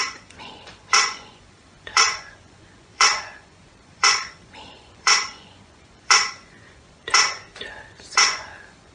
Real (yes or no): no